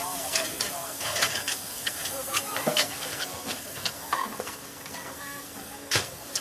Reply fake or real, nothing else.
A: fake